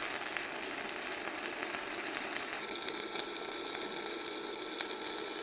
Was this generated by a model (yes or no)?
no